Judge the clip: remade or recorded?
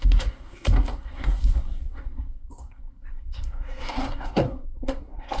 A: remade